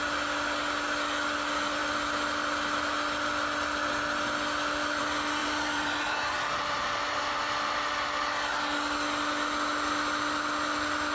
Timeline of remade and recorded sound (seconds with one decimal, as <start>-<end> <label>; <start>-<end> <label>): 0.0-5.4 recorded; 5.4-7.5 remade; 7.5-11.1 recorded